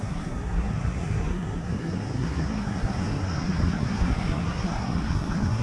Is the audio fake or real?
fake